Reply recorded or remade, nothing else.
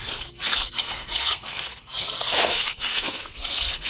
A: remade